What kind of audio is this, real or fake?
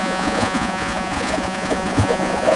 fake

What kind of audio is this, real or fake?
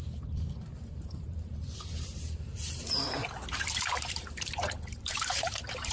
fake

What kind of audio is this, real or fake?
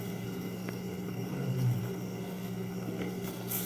fake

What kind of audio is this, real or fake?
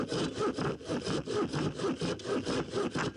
real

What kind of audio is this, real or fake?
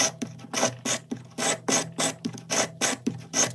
real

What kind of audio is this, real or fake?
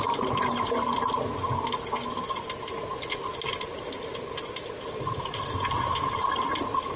real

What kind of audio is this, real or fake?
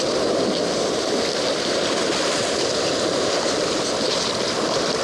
real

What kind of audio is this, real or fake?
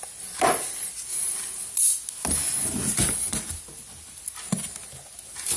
real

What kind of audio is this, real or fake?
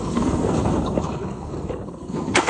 fake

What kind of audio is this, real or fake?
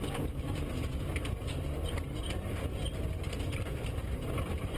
fake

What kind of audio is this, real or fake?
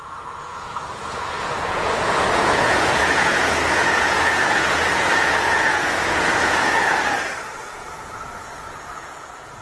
fake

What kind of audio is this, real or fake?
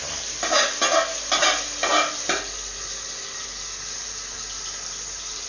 real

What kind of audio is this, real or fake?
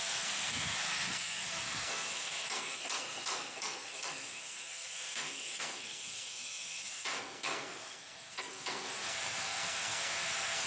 fake